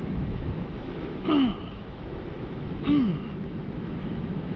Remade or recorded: remade